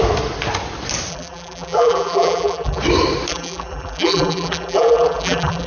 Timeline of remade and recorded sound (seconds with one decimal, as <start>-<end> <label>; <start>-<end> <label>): 0.0-1.1 recorded; 1.1-2.8 remade; 2.8-3.3 recorded; 3.3-5.7 remade